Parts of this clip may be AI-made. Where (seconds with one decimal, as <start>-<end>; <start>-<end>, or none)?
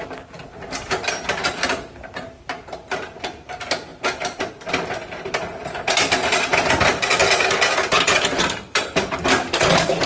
none